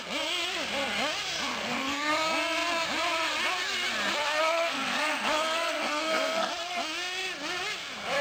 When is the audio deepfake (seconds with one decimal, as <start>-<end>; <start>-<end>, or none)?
1.5-2.1; 4.4-6.5